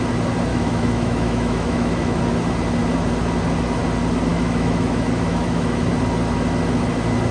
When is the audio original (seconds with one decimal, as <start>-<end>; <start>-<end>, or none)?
0.0-0.5; 2.2-4.3; 5.9-7.3